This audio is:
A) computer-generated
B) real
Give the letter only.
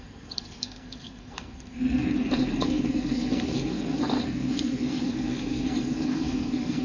A